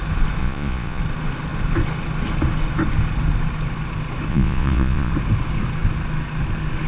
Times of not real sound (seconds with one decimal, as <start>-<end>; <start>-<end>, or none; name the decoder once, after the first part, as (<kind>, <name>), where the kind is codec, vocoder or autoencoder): 0.4-1.0 (vocoder, Vocos); 4.3-5.1